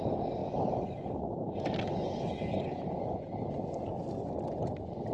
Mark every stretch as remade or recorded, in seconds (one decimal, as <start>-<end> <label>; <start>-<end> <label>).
0.0-5.1 recorded